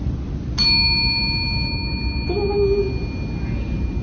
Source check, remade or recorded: recorded